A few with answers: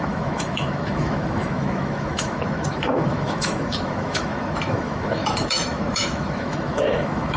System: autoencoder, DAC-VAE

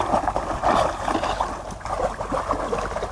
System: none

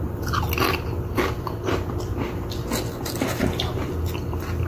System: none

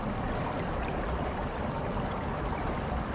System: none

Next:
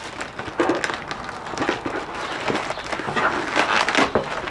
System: none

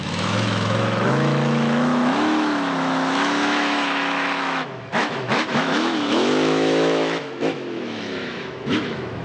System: autoencoder, DAC-VAE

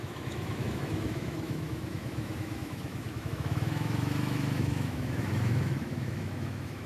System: autoencoder, DAC-VAE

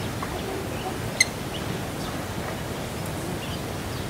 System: none